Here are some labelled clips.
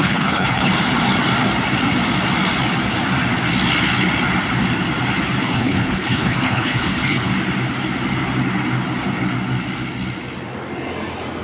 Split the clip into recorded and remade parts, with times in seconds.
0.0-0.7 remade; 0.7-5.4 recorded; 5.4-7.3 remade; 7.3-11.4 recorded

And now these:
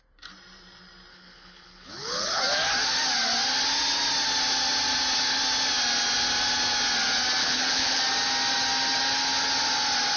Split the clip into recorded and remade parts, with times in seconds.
0.0-1.1 recorded; 1.1-2.4 remade; 2.4-7.4 recorded; 7.4-8.0 remade; 8.0-10.2 recorded